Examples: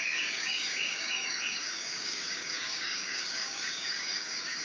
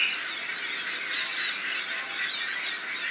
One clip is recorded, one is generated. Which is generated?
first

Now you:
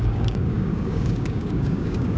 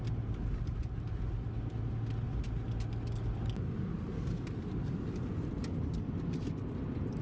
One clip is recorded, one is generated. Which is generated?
first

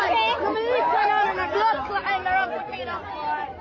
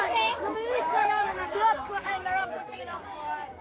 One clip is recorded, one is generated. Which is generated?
second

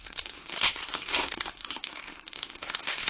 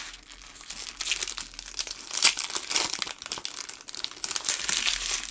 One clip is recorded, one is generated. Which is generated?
first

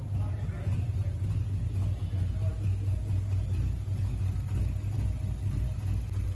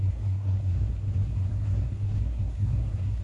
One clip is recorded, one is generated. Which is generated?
second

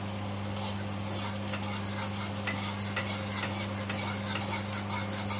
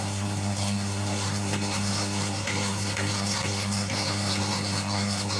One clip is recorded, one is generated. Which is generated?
second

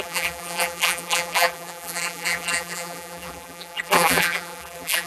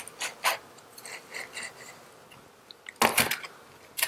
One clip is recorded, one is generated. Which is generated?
first